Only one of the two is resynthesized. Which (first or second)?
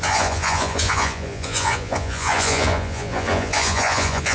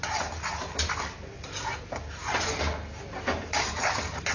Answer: first